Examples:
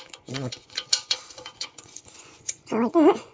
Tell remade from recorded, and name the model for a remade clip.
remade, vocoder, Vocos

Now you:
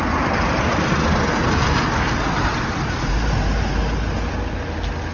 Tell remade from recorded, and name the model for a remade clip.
recorded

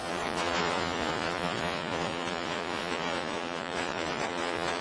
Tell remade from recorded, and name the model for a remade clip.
remade, vocoder, Vocos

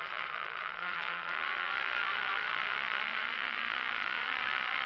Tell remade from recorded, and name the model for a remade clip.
remade, vocoder, Vocos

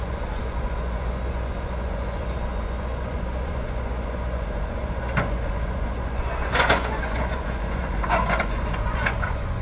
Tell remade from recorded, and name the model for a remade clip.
remade, vocoder, Vocos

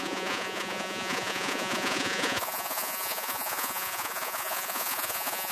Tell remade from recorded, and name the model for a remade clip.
remade, vocoder, Vocos